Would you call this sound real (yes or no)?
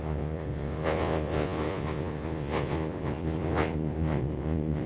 no